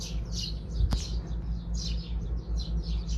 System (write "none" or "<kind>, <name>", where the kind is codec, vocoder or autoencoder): none